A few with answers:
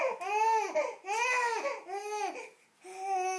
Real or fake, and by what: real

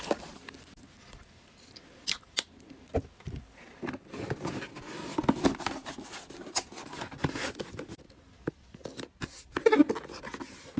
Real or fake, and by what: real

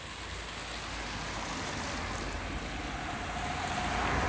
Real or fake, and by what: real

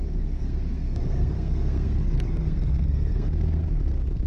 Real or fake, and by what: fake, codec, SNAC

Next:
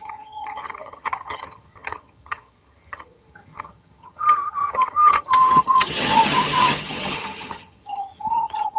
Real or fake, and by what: fake, vocoder, HiFi-GAN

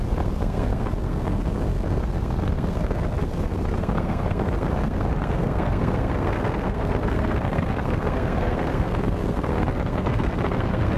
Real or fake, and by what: fake, codec, SNAC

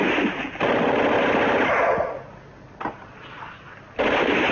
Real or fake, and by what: real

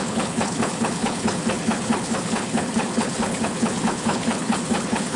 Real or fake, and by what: fake, codec, HILCodec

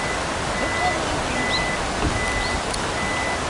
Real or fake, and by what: real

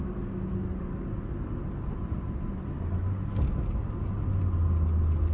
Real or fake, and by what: real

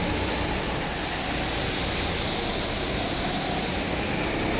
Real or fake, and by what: real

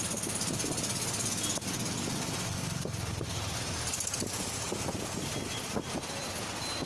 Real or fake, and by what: real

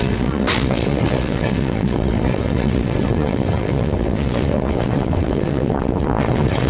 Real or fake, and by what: fake, vocoder, WaveNeXt